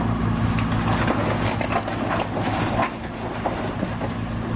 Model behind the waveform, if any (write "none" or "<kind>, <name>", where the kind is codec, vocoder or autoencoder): none